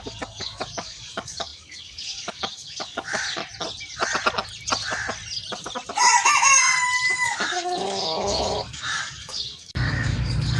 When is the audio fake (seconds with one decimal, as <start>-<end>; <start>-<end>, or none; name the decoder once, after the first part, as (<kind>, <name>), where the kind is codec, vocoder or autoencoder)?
0.0-3.4 (codec, DAC); 7.1-10.6